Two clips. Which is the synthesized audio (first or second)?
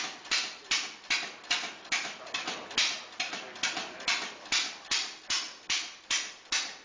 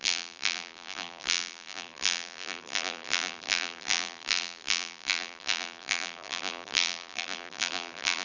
second